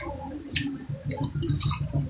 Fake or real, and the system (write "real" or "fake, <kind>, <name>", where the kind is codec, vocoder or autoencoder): real